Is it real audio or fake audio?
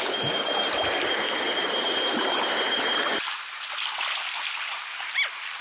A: real